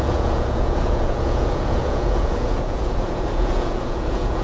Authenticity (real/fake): fake